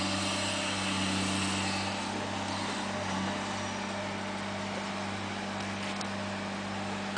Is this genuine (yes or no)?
yes